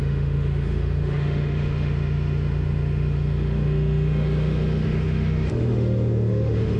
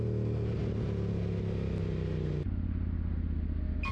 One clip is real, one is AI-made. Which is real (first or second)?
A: second